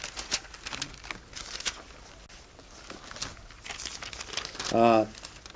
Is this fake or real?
real